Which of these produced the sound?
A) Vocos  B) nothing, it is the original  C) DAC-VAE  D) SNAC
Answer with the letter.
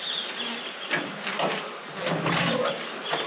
B